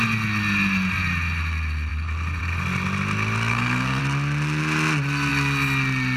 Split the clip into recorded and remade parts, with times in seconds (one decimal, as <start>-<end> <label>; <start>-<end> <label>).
0.0-3.5 recorded; 3.5-4.0 remade; 4.0-6.2 recorded